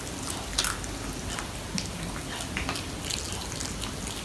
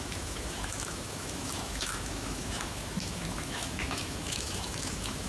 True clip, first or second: first